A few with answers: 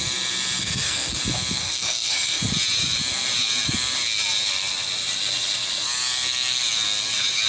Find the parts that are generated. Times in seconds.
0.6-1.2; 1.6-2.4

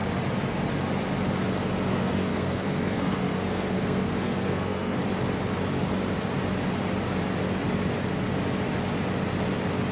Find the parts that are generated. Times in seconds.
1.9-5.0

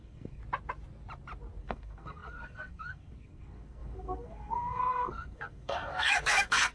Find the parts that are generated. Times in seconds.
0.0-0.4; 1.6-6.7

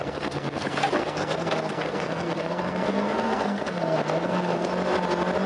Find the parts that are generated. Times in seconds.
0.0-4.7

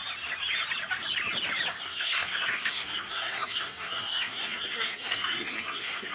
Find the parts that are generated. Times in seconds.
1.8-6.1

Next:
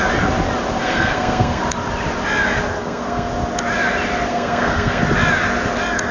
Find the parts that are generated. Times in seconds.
0.8-1.6; 2.8-3.3; 4.3-5.0

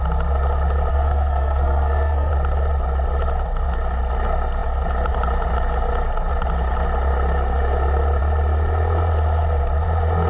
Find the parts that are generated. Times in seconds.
0.9-2.3